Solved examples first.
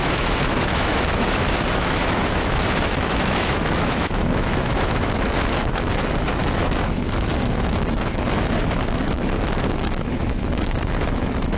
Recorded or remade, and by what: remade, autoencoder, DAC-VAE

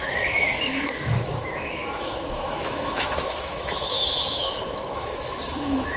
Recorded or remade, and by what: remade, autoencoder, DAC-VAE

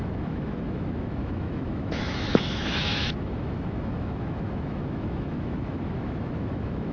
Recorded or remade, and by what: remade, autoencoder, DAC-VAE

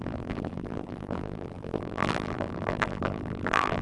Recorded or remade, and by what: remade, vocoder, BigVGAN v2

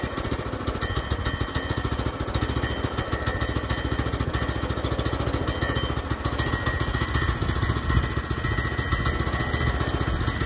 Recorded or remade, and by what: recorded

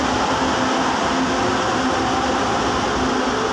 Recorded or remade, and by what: recorded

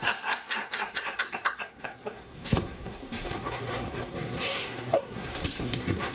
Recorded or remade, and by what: remade, codec, SNAC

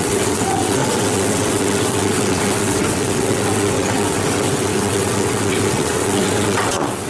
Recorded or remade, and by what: remade, vocoder, WaveNeXt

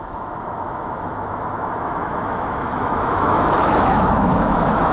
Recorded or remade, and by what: remade, autoencoder, DAC-VAE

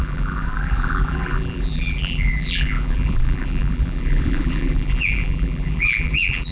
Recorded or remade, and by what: remade, vocoder, BigVGAN v2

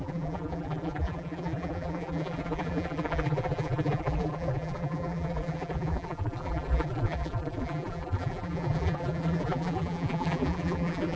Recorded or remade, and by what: remade, vocoder, BigVGAN v2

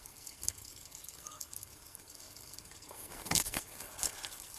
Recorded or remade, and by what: remade, codec, SNAC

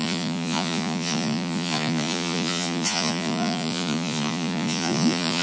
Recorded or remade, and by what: remade, vocoder, Vocos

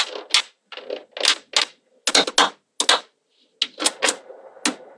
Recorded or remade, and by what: recorded